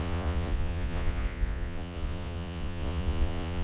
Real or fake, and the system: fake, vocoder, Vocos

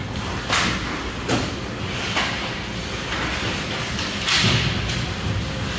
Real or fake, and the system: real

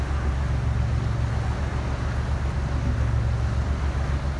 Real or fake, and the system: real